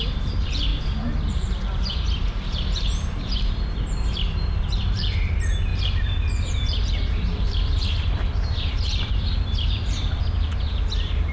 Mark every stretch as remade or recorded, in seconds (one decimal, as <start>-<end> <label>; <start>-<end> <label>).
0.0-0.7 remade; 0.7-1.3 recorded; 1.3-11.3 remade

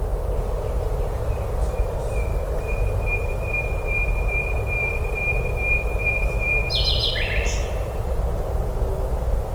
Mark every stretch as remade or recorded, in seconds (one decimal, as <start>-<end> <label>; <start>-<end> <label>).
0.0-4.8 recorded; 4.8-8.2 remade; 8.2-9.5 recorded

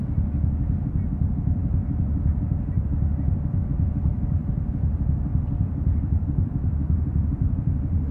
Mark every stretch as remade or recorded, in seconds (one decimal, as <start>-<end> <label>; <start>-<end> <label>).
0.0-1.6 recorded; 1.6-2.8 remade; 2.8-4.1 recorded; 4.1-8.1 remade

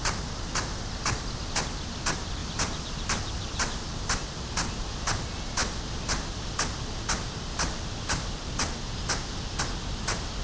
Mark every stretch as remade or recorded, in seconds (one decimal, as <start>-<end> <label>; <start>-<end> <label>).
0.0-2.4 recorded; 2.4-4.2 remade; 4.2-10.4 recorded

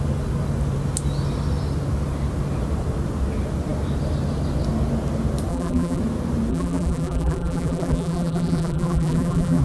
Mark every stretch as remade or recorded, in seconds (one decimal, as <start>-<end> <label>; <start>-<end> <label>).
0.0-5.5 recorded; 5.5-6.0 remade; 6.0-6.5 recorded; 6.5-9.6 remade

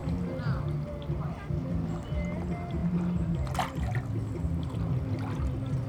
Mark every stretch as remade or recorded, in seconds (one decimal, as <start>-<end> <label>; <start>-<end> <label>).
0.0-5.9 recorded